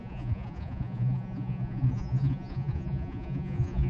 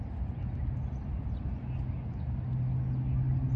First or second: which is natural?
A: second